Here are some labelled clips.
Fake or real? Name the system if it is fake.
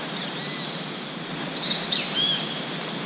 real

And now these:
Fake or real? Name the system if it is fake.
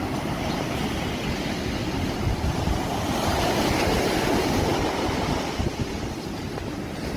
real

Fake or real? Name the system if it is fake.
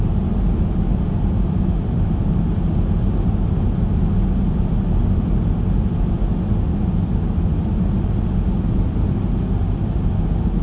real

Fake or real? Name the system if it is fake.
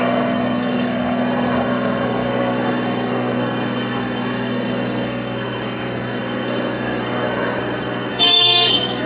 fake, codec, SNAC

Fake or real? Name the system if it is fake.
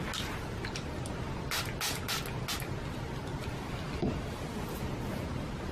real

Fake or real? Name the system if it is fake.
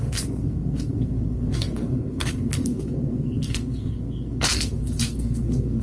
fake, codec, SNAC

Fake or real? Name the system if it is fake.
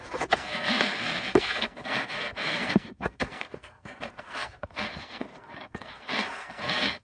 fake, codec, SNAC